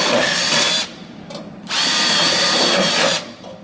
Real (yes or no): yes